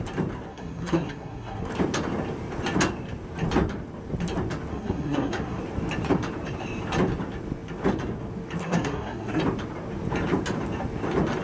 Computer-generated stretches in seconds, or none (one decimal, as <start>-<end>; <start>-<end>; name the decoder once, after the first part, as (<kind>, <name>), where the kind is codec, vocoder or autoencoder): 0.5-1.7 (codec, SNAC); 4.7-5.6; 8.6-9.4